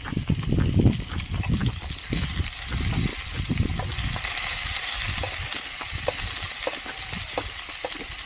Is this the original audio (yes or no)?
yes